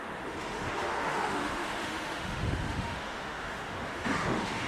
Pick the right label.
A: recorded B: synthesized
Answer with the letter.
B